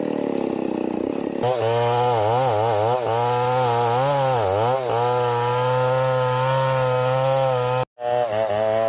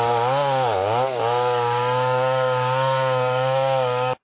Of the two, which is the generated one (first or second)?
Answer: second